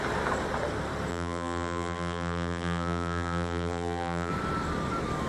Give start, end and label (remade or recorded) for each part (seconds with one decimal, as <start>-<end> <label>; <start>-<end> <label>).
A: 0.0-1.1 recorded; 1.1-4.3 remade; 4.3-5.3 recorded